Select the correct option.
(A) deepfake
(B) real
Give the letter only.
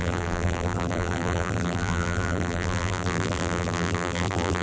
A